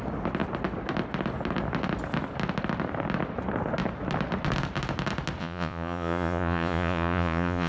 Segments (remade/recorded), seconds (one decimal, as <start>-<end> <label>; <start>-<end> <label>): 0.0-5.4 recorded; 5.4-7.7 remade